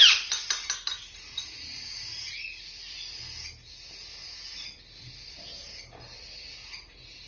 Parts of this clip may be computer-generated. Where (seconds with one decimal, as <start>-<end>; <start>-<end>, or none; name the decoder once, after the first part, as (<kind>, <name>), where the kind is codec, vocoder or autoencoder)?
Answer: none